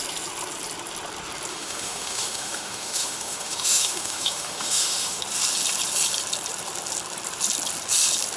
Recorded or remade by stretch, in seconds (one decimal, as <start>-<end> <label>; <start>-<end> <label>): 0.0-1.5 recorded; 1.5-5.2 remade; 5.2-8.4 recorded